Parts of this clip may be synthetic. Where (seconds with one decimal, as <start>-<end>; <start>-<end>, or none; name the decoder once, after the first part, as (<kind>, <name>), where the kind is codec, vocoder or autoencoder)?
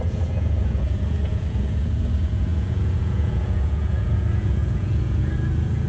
0.0-5.9 (vocoder, Vocos)